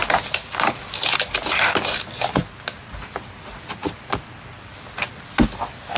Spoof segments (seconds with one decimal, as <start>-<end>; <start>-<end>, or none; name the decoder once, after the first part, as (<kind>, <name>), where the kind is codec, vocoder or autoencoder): none

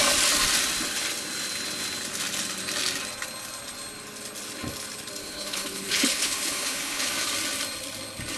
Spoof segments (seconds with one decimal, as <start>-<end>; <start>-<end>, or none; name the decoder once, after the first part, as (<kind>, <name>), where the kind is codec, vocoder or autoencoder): 5.2-7.1 (codec, HILCodec)

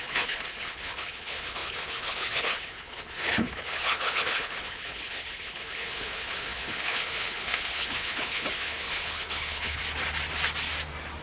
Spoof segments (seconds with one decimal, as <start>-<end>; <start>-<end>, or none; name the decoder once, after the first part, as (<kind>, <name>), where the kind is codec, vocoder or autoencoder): 0.0-9.8 (codec, HILCodec)

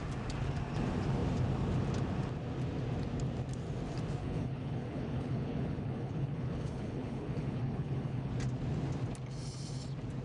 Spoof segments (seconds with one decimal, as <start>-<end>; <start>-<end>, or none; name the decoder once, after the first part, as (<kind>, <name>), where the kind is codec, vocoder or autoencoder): 4.2-8.3 (codec, HILCodec)

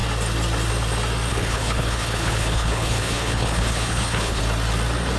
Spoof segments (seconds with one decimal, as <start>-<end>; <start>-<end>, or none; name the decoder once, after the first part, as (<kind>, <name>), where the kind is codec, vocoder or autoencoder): 1.3-4.4 (codec, HILCodec)

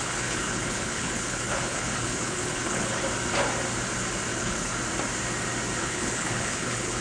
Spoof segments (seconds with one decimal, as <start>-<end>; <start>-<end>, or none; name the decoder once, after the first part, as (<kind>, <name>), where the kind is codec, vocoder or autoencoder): 0.0-3.0 (codec, HILCodec); 4.3-4.7; 5.8-7.0